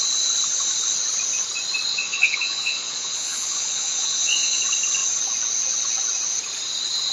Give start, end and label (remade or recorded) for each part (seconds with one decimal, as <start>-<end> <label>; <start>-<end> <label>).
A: 0.0-1.9 recorded; 1.9-4.6 remade; 4.6-7.1 recorded